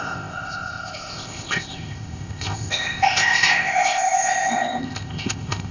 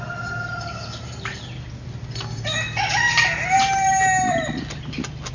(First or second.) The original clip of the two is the second